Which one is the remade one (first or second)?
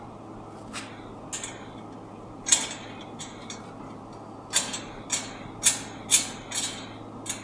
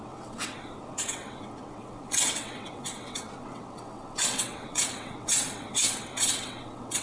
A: second